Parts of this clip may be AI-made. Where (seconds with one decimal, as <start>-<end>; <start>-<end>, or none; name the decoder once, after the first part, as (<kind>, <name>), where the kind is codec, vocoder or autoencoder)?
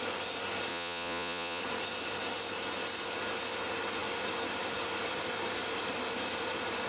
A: 0.7-1.6 (vocoder, Vocos)